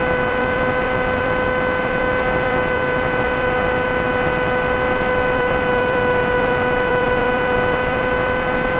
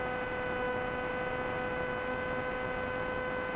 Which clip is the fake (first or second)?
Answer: first